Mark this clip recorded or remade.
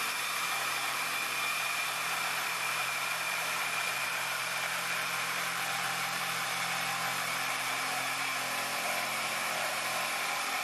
remade